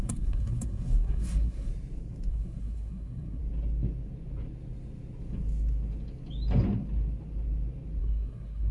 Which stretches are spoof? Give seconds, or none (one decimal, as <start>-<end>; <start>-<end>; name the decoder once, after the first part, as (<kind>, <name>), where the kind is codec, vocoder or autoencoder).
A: 0.0-1.7 (codec, SNAC); 2.3-3.4; 8.0-8.7